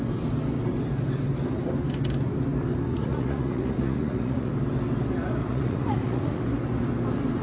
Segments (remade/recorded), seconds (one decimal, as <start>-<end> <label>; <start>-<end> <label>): 0.0-2.9 recorded; 2.9-4.5 remade; 4.5-5.4 recorded; 5.4-6.4 remade; 6.4-7.4 recorded